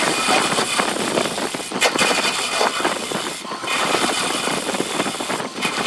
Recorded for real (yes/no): yes